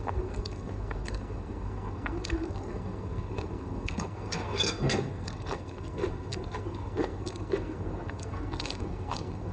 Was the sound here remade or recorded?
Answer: remade